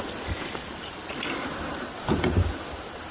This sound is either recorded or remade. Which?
recorded